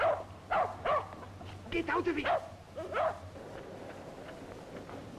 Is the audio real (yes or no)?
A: yes